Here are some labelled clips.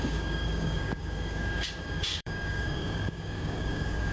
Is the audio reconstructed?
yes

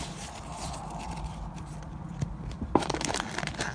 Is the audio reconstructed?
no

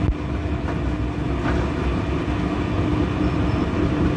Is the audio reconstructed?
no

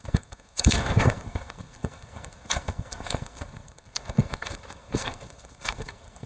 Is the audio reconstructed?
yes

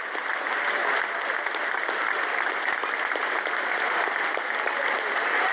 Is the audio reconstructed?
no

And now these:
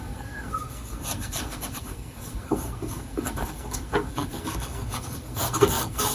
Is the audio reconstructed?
yes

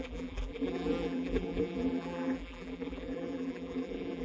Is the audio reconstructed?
yes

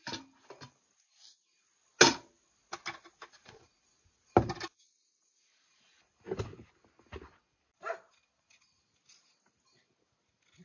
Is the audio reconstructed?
no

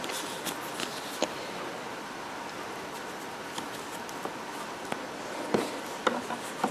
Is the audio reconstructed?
no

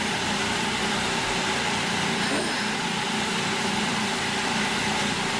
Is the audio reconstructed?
yes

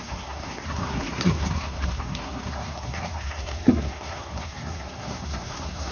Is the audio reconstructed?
yes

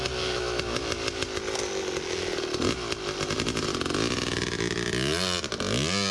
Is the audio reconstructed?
no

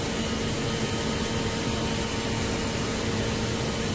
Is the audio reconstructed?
no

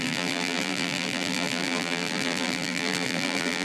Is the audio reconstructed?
yes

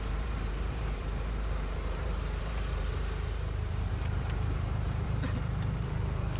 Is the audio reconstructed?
yes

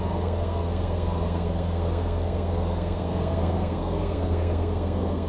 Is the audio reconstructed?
yes